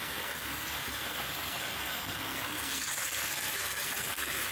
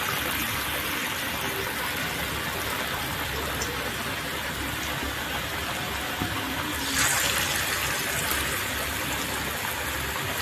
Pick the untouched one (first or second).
second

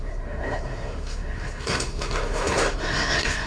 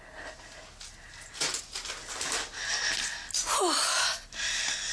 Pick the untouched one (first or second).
second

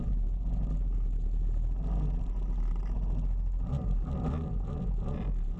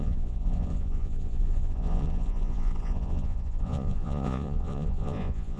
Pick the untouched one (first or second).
first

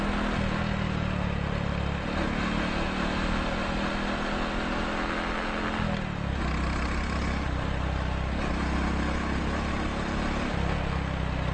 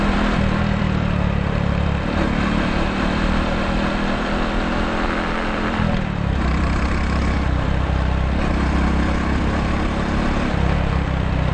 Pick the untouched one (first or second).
first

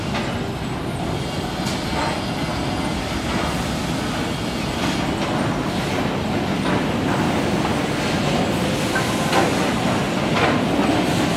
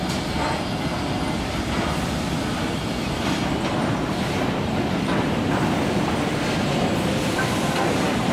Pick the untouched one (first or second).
first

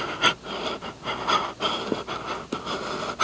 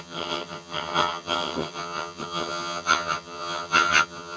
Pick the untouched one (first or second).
first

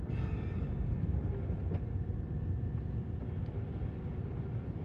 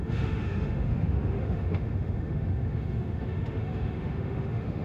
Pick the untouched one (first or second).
first